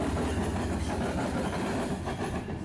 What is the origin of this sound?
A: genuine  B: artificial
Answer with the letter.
A